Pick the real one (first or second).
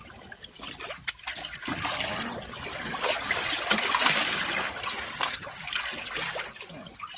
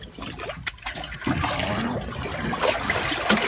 second